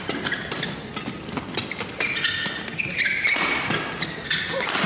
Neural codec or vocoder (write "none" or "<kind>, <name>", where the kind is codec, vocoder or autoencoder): none